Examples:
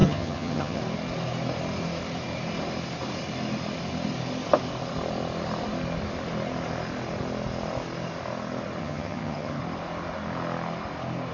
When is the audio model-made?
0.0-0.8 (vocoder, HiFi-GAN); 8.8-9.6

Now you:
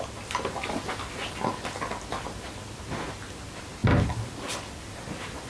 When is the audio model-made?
none